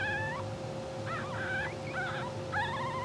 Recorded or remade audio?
recorded